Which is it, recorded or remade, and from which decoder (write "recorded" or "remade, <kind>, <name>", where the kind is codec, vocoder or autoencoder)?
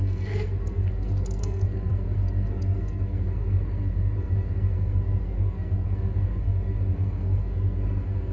remade, codec, SNAC